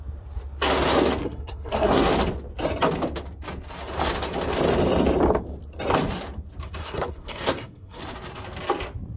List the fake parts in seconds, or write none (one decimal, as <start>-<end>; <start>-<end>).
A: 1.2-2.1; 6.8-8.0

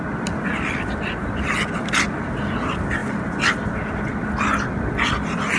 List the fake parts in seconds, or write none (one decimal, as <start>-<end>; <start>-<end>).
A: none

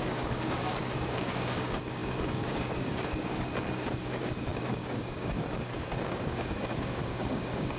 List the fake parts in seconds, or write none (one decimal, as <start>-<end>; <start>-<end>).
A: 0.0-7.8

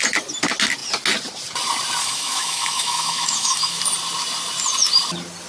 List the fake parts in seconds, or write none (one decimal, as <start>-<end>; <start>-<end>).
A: 2.0-3.8

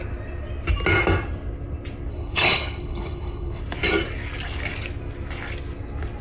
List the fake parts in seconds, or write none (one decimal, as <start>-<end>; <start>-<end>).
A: 2.1-3.6